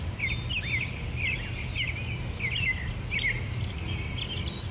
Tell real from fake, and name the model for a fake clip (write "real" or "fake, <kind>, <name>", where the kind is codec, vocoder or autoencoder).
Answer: real